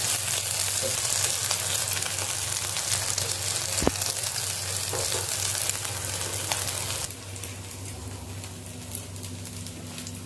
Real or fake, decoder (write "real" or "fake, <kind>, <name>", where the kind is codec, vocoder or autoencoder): real